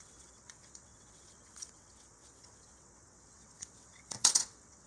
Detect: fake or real fake